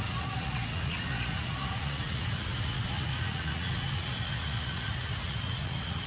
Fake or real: fake